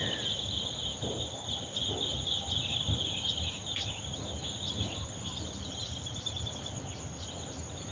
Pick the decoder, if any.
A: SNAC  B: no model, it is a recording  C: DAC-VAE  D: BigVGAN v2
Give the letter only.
B